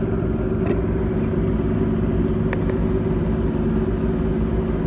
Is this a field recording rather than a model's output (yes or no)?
yes